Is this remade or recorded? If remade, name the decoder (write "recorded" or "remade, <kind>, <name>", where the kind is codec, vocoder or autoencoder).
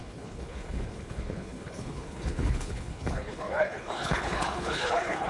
remade, codec, HILCodec